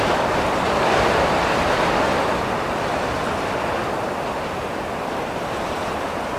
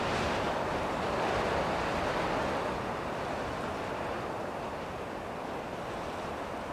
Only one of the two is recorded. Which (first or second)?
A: second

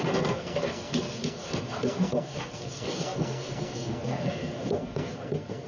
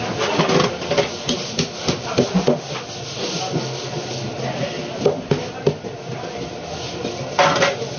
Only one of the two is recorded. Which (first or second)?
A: second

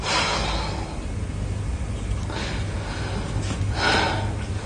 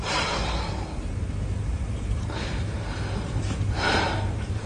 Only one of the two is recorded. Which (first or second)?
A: first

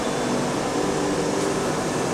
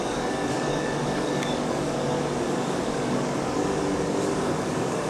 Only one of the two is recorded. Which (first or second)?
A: first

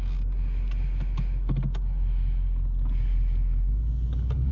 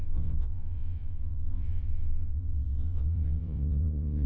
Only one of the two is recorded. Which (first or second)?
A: first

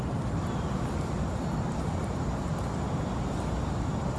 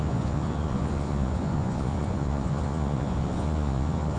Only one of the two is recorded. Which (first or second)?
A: first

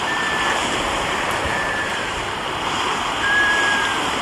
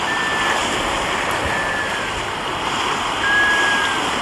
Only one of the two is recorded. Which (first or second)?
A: second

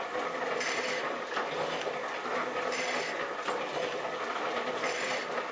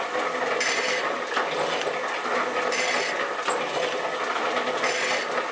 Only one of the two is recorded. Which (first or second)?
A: second